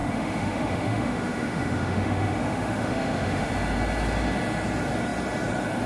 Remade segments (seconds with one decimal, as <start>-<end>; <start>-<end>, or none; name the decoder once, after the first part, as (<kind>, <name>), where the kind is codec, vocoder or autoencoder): 0.0-3.5 (autoencoder, DAC-VAE)